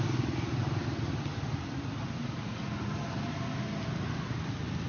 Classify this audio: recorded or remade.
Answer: recorded